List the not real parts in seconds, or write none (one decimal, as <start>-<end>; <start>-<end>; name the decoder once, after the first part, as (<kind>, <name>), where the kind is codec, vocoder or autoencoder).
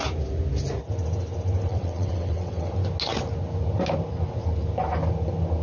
1.7-2.7 (vocoder, WaveNeXt)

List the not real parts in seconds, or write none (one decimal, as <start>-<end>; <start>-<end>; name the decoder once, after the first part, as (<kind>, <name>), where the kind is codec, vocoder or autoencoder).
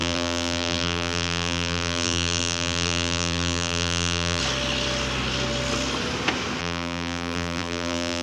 0.0-4.4 (vocoder, BigVGAN v2); 6.6-8.2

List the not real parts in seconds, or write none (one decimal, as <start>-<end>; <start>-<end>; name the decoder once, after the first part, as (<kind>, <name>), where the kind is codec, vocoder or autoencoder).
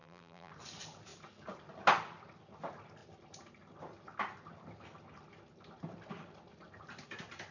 0.0-0.5 (vocoder, BigVGAN v2)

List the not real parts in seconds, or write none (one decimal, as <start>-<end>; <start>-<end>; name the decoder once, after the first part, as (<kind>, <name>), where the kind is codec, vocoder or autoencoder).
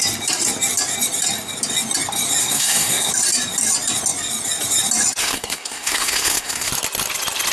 2.4-3.1 (codec, SNAC); 5.2-6.7